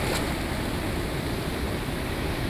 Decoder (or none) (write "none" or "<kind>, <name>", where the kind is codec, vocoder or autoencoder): none